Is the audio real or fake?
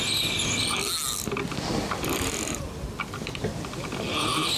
real